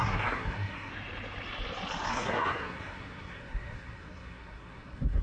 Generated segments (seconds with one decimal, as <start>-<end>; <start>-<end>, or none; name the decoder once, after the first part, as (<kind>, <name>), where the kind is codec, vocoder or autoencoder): 0.0-0.9 (codec, SNAC); 2.1-5.2